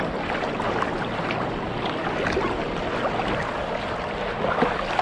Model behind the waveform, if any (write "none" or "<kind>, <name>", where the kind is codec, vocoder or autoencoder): none